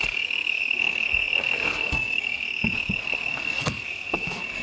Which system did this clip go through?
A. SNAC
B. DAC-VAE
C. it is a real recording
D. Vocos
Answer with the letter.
A